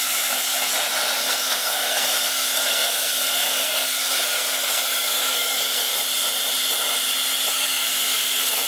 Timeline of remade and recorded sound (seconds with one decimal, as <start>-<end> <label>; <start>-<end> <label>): 0.0-0.7 remade; 0.7-1.2 recorded; 1.2-5.9 remade; 5.9-7.5 recorded; 7.5-8.7 remade